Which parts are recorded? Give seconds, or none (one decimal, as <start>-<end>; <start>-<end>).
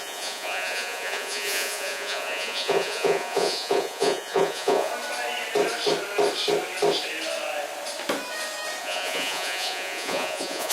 4.9-8.8